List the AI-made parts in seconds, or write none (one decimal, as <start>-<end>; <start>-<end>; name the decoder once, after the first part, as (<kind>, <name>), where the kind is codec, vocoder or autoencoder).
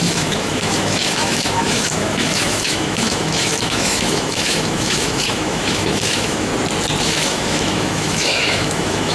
0.0-6.5 (autoencoder, DAC-VAE); 7.0-9.1